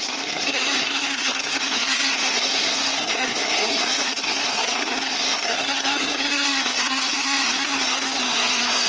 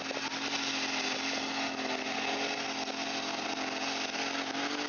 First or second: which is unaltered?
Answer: second